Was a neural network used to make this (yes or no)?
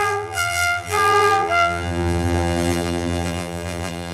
yes